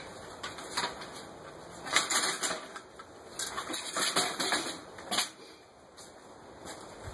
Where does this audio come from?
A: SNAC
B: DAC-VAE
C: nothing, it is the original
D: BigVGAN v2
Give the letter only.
C